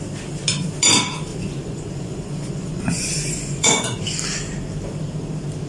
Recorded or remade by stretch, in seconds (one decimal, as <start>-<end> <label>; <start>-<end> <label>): 0.0-1.3 recorded; 1.3-4.0 remade; 4.0-5.7 recorded